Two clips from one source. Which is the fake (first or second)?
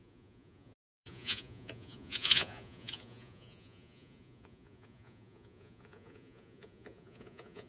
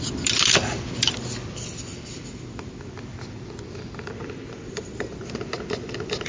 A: first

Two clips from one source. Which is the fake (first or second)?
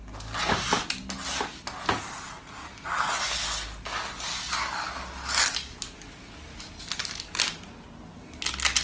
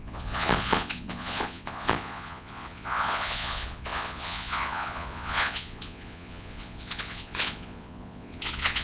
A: second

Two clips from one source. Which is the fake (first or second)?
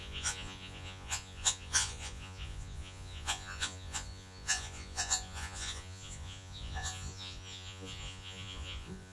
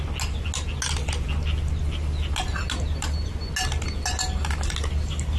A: first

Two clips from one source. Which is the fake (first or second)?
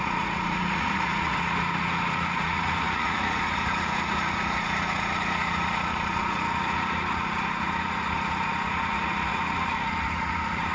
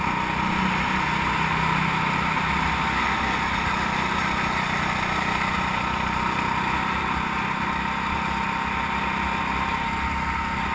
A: first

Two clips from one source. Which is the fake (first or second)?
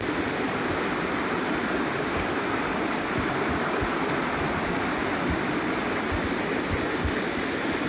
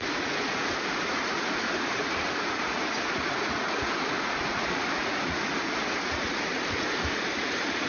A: second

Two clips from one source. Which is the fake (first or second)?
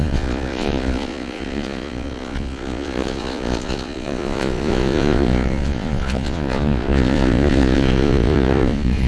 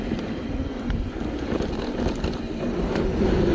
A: first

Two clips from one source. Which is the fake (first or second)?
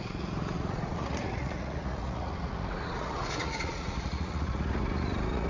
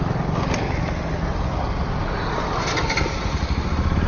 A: first